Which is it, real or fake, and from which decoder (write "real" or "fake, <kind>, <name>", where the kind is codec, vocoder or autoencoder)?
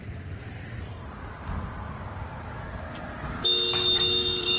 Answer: real